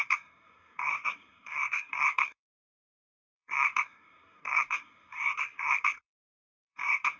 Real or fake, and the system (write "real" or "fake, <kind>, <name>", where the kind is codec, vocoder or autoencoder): fake, codec, SNAC